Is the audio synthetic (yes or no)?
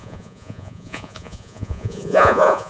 yes